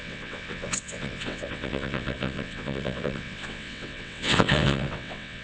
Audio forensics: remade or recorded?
remade